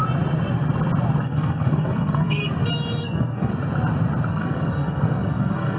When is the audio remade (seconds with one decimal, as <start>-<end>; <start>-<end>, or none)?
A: 1.2-2.4; 3.0-3.5; 4.3-5.8